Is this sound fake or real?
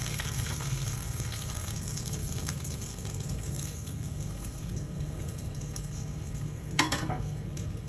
fake